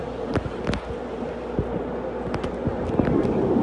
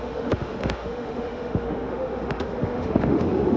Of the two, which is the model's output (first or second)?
second